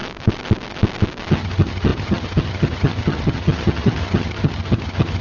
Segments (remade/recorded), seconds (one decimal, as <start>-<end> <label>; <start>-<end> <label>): 0.0-1.3 recorded; 1.3-5.2 remade